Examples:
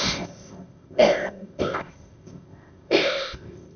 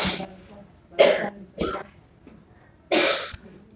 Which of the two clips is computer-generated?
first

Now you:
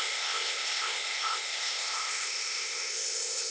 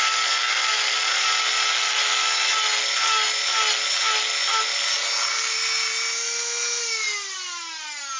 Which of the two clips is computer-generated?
first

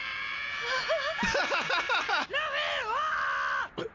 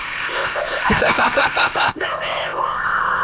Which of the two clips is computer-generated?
second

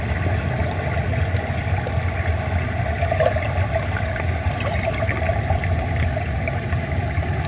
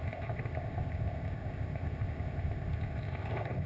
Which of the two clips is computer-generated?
second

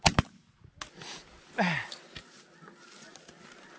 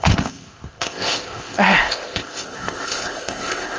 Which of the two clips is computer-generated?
second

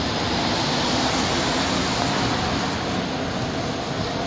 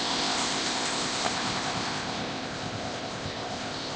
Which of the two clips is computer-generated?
second